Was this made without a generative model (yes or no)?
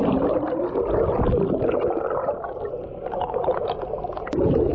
yes